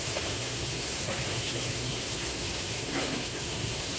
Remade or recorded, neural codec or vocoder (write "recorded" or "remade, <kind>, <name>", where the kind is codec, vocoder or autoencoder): remade, codec, SNAC